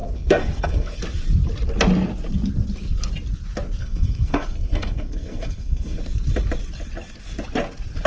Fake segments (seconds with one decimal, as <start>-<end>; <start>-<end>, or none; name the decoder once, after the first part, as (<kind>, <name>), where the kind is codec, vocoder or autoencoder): 0.0-1.0 (codec, SNAC); 3.8-6.0